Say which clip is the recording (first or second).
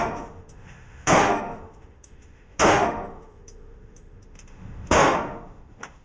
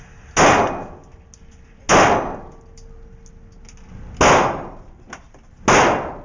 second